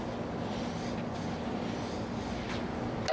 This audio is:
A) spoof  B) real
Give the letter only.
B